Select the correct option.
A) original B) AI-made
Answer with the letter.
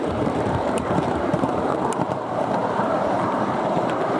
B